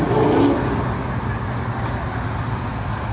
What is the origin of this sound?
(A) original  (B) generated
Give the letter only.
A